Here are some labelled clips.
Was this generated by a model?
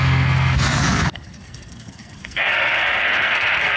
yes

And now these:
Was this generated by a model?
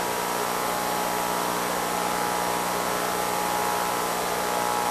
no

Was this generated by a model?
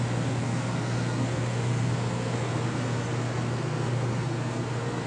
yes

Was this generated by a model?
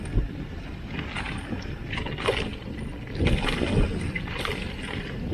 no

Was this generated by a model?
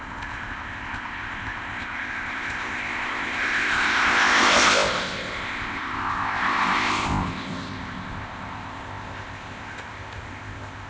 yes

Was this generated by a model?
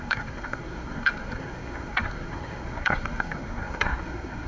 yes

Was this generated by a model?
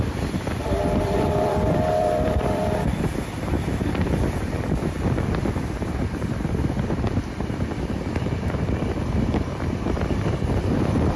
yes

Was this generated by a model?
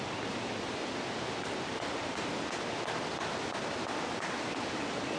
no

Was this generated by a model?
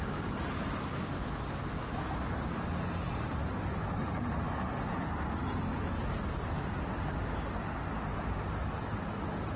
no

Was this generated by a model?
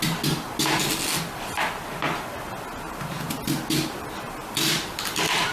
no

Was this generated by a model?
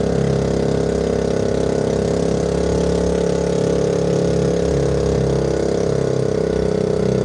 no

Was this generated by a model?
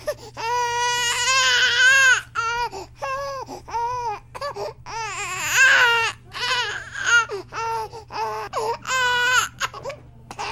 no